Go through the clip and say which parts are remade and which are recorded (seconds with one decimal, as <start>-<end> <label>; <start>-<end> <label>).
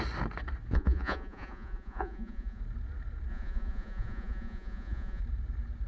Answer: 0.0-0.7 recorded; 0.7-2.6 remade; 2.6-3.3 recorded; 3.3-5.2 remade; 5.2-5.9 recorded